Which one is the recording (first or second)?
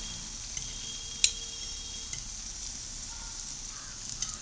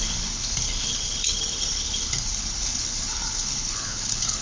first